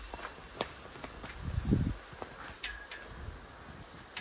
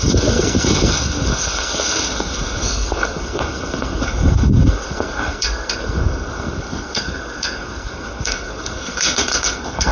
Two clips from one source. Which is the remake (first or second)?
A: second